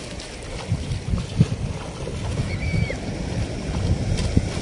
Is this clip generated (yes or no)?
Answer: yes